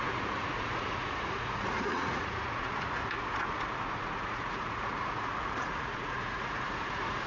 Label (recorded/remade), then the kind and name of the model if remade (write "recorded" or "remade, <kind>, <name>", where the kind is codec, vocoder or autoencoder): remade, vocoder, Vocos